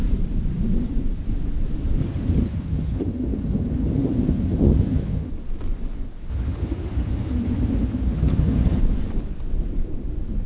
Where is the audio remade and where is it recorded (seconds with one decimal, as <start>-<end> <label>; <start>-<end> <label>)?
0.0-2.0 recorded; 2.0-5.3 remade; 5.3-6.3 recorded; 6.3-8.8 remade; 8.8-10.5 recorded